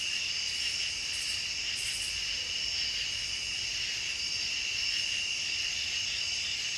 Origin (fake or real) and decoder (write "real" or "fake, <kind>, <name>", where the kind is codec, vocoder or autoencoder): fake, vocoder, BigVGAN v2